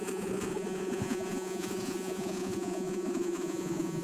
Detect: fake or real fake